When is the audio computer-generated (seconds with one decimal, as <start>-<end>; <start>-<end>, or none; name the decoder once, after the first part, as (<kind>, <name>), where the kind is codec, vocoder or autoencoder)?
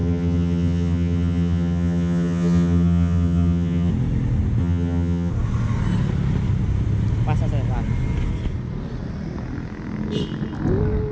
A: 0.0-3.9 (vocoder, HiFi-GAN); 4.6-5.3